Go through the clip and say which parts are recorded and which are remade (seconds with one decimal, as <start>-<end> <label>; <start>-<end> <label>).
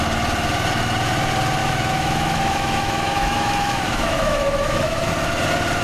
0.0-1.6 recorded; 1.6-5.1 remade; 5.1-5.8 recorded